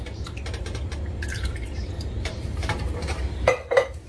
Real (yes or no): no